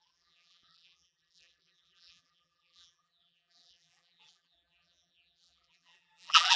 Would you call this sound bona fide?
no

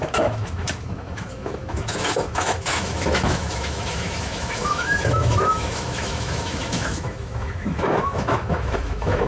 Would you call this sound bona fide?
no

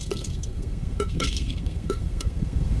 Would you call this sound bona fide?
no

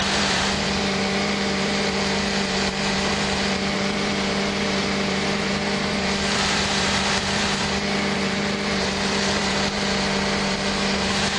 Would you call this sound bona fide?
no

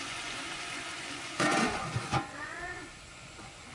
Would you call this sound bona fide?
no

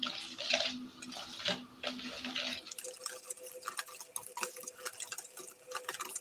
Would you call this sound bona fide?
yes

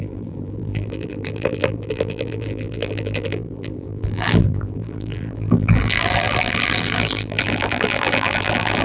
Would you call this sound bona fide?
no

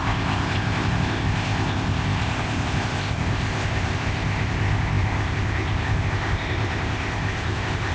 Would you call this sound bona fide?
no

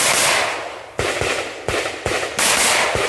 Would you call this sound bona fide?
yes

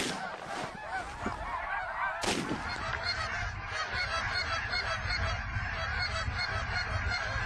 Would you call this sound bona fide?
yes